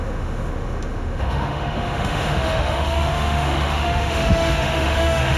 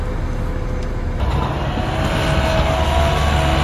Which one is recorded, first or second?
second